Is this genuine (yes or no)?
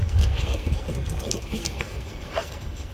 no